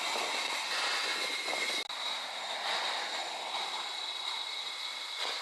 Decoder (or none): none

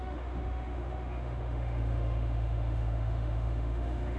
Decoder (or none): autoencoder, DAC-VAE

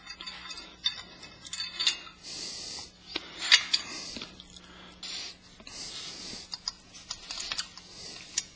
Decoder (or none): none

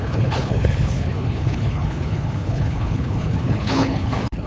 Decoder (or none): codec, HILCodec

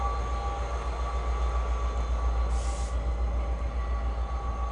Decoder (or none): none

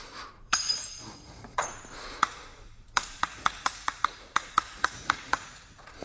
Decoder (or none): vocoder, Vocos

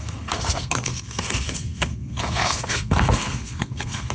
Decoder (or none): codec, SNAC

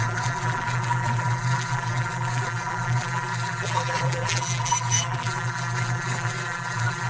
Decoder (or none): vocoder, BigVGAN v2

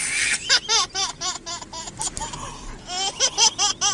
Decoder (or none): none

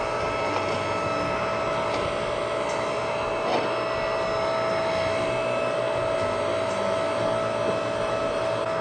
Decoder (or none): none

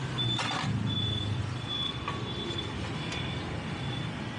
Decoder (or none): none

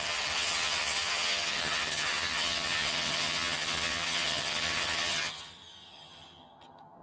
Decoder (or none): vocoder, HiFi-GAN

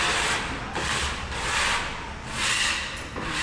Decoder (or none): none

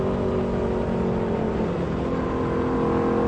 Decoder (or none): none